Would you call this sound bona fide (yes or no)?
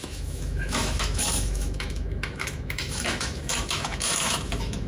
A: no